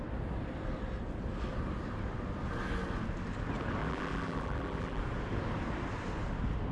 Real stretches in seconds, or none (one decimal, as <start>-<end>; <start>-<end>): 0.0-3.8; 5.0-6.7